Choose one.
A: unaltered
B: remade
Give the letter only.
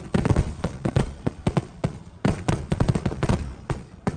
B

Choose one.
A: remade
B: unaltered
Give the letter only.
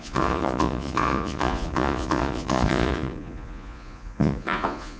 A